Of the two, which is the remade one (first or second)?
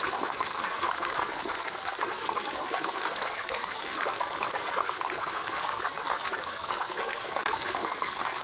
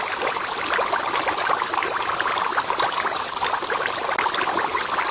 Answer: first